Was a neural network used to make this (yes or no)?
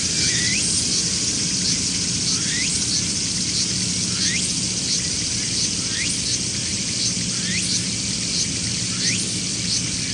no